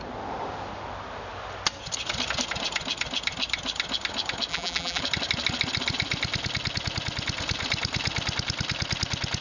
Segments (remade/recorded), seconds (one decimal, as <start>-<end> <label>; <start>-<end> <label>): 0.0-4.5 recorded; 4.5-5.0 remade; 5.0-9.4 recorded